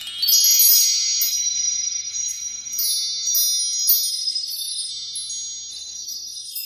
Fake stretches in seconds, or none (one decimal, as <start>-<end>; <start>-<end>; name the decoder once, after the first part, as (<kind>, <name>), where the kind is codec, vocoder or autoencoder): 1.3-2.7 (autoencoder, DAC-VAE); 4.1-4.9; 5.7-6.7